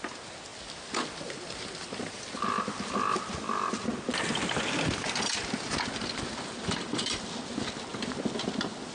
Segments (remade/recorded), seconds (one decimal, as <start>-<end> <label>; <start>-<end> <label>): 0.0-8.9 recorded